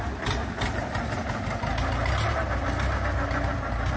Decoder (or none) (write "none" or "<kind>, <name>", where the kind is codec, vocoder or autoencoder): none